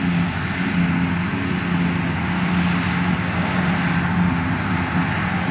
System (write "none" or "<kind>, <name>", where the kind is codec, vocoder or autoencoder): none